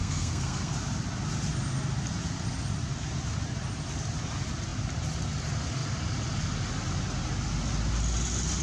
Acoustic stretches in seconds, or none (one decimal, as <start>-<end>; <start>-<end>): 0.7-8.6